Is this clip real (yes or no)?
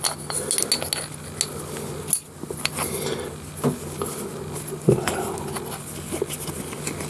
yes